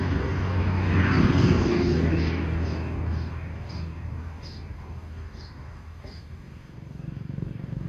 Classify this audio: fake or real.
fake